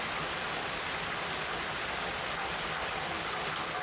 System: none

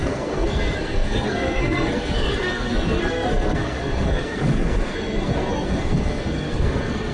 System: codec, SNAC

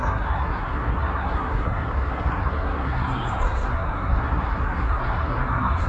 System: codec, SNAC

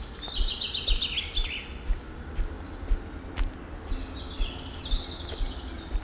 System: none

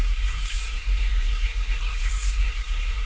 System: codec, SNAC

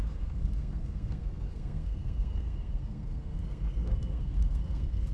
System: codec, SNAC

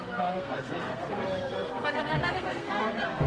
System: codec, SNAC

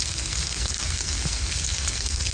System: codec, SNAC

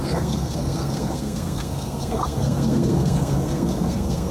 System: codec, SNAC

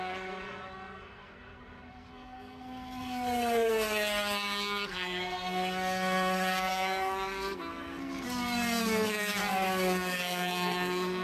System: codec, SNAC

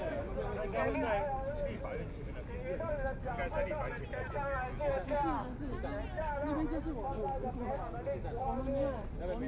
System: none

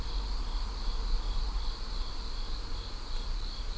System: none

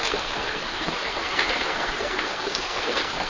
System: codec, SNAC